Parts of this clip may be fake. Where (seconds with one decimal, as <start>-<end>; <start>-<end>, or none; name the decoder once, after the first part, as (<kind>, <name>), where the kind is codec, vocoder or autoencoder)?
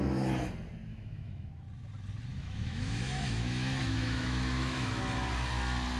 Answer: 0.9-1.5 (autoencoder, DAC-VAE); 2.3-5.0